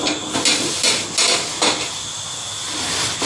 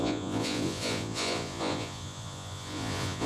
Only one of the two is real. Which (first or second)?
first